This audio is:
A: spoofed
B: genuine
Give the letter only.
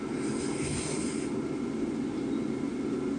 B